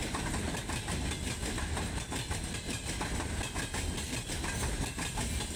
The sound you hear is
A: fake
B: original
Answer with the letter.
B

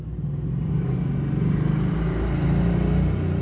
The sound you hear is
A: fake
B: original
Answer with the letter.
B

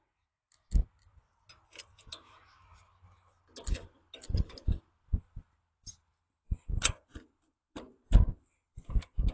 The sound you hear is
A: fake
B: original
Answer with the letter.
B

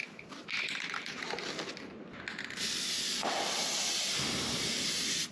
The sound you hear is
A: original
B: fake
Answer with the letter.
A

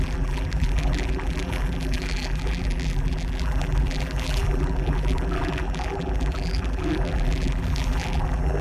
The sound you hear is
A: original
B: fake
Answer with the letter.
B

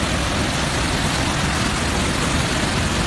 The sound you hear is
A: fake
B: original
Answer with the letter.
B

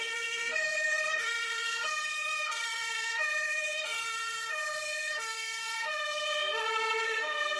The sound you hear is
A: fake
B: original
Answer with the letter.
A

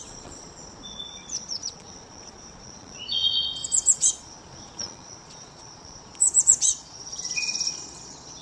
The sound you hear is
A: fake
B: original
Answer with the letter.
A